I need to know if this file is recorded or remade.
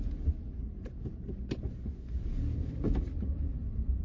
recorded